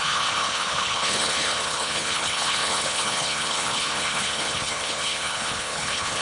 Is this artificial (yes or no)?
yes